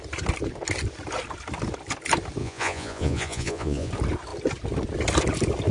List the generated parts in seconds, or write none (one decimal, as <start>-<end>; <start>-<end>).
2.4-3.9